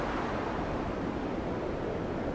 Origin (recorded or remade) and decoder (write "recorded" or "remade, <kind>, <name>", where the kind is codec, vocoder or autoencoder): recorded